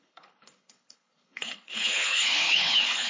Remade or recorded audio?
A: remade